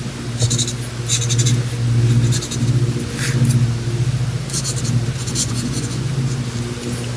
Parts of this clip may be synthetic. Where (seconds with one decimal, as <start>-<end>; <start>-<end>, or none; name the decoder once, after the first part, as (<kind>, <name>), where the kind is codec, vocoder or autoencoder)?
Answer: 5.2-6.1 (vocoder, Vocos)